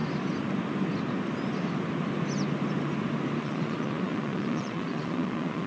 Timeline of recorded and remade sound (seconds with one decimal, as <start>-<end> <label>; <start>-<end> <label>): 0.0-3.4 recorded; 3.4-5.7 remade